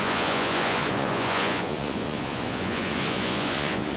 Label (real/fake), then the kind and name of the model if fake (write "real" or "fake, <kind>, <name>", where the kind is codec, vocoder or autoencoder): fake, vocoder, Vocos